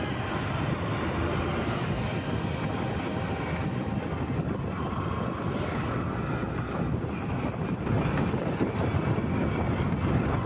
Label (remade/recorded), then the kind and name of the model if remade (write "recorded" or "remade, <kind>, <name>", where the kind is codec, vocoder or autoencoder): recorded